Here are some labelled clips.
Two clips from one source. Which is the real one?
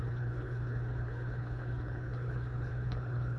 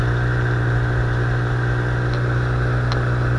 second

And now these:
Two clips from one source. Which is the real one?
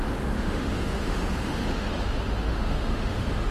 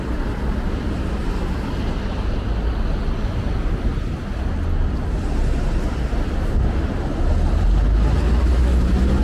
second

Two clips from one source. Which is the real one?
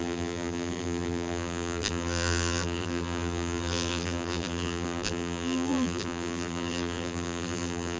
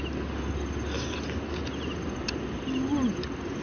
second